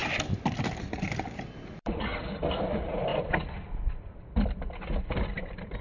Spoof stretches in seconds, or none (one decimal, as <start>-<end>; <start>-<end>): 0.8-2.1; 2.6-3.1; 5.3-5.8

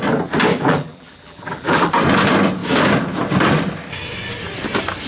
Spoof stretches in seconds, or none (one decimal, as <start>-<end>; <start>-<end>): 0.5-1.9

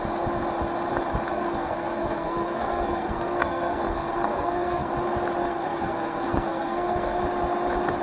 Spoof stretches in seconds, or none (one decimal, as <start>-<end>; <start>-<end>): 1.3-4.9; 5.4-7.2

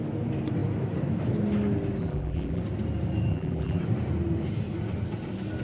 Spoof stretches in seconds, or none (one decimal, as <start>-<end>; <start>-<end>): 2.0-2.6; 3.3-3.8

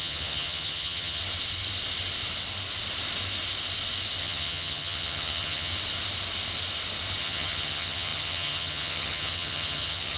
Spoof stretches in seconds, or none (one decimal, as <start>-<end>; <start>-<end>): 0.0-1.2; 4.2-5.7; 7.2-10.2

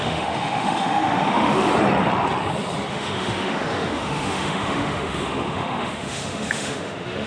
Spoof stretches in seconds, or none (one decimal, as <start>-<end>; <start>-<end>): 0.0-1.7; 2.9-7.3

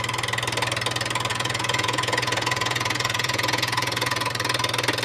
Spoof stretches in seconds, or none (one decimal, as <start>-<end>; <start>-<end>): 1.3-4.3

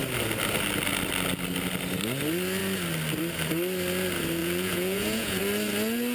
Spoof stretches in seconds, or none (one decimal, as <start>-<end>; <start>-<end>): 4.4-5.4